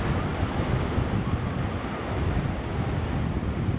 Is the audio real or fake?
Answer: real